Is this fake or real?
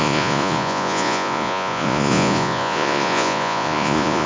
fake